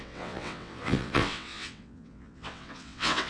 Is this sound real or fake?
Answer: fake